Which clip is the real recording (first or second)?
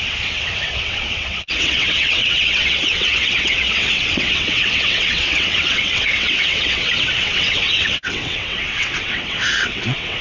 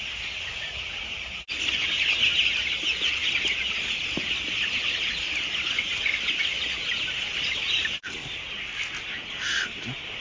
second